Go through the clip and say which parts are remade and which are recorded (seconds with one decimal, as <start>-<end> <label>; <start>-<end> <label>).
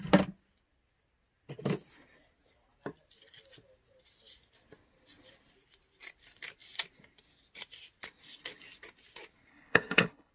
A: 0.0-9.5 recorded; 9.5-10.3 remade